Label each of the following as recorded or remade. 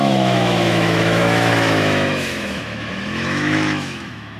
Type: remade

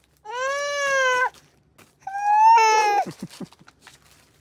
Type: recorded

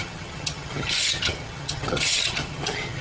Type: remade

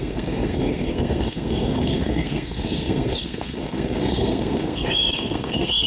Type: remade